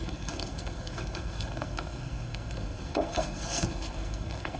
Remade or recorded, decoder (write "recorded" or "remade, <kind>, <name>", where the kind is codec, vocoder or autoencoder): remade, codec, SNAC